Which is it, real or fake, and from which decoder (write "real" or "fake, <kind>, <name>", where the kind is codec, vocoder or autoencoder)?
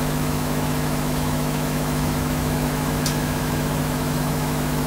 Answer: fake, autoencoder, DAC-VAE